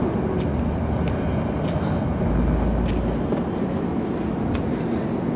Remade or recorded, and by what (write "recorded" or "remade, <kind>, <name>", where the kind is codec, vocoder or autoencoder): recorded